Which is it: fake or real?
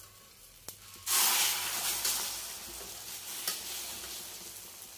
real